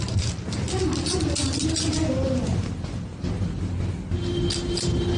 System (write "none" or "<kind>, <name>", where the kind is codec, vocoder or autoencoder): none